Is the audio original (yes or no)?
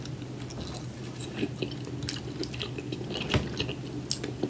yes